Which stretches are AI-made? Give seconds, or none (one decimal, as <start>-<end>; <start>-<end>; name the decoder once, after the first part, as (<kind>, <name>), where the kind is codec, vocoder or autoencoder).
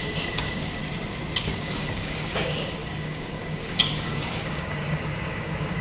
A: 0.0-0.8 (codec, DAC); 1.4-5.8